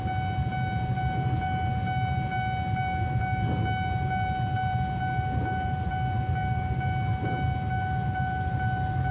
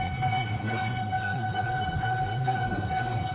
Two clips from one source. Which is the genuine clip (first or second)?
first